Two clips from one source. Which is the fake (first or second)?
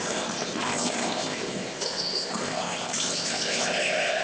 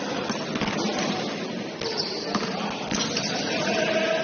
first